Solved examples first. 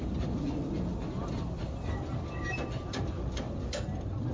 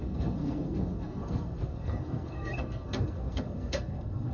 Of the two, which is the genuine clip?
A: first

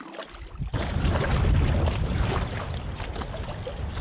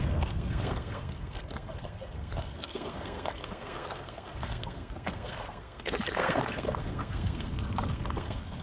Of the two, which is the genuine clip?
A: first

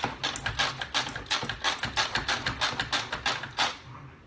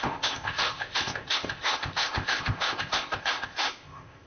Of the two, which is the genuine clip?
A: first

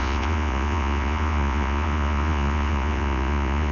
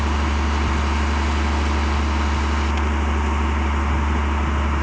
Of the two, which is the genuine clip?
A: second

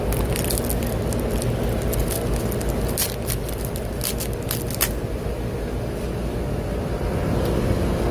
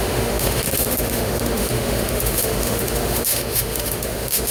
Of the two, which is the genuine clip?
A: first